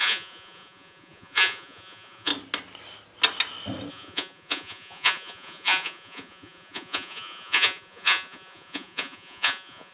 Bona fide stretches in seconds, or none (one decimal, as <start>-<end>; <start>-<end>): 2.3-3.9